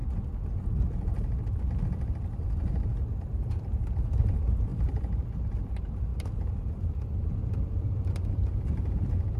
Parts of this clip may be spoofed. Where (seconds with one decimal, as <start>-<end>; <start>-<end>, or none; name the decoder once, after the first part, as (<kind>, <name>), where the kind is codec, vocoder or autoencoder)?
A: 2.9-4.7 (vocoder, BigVGAN v2); 5.5-9.4